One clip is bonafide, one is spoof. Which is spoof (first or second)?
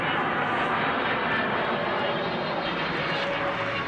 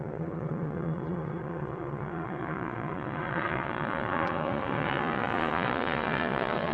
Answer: second